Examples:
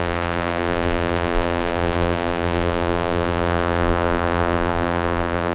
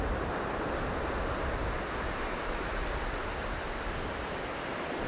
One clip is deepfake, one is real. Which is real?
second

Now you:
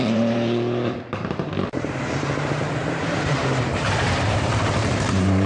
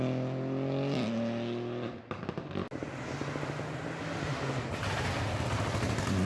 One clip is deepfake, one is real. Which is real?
second